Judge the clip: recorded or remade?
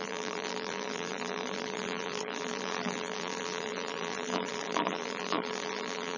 remade